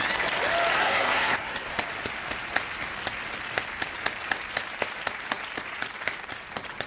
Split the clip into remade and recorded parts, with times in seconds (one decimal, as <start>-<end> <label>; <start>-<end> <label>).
0.0-0.8 recorded; 0.8-1.7 remade; 1.7-6.9 recorded